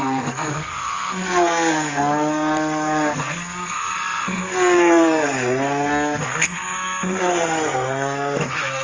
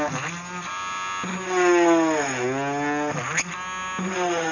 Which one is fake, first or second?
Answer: first